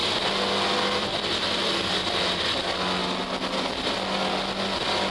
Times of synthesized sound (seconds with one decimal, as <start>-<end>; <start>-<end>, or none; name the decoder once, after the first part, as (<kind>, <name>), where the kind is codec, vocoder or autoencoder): none